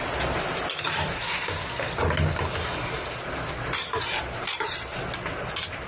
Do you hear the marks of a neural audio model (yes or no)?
no